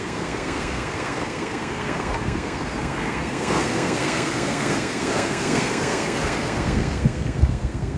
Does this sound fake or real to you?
fake